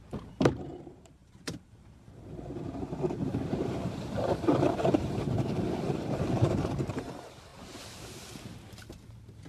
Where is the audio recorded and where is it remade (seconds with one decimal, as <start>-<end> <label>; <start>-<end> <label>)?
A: 0.0-7.5 remade; 7.5-9.1 recorded; 9.1-9.5 remade